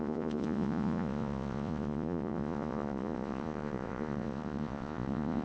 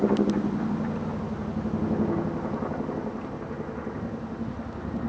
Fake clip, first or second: first